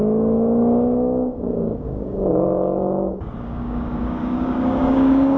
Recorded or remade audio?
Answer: remade